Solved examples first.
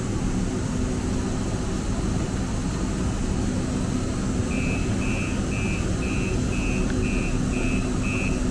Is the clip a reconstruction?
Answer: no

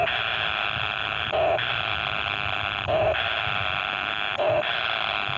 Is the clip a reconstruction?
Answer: no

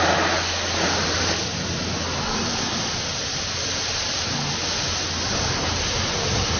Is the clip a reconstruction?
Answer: no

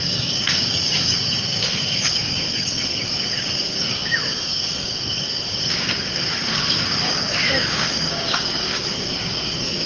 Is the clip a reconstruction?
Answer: yes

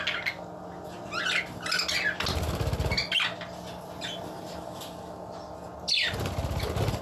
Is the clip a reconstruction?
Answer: no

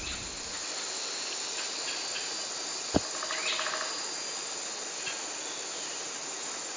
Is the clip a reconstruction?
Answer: no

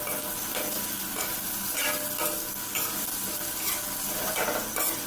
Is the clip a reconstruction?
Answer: no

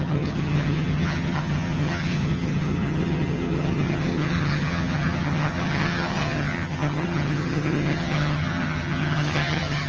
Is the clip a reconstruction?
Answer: yes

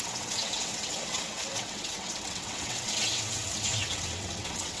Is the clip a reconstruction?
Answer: yes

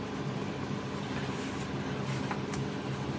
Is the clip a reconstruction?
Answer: no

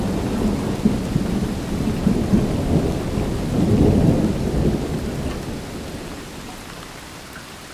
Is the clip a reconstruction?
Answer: no